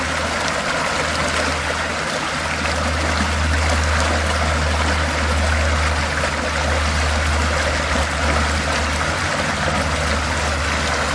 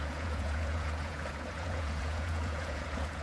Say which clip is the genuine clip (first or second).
first